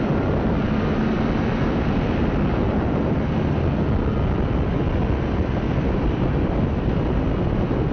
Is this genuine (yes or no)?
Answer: yes